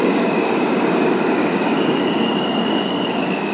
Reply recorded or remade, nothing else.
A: remade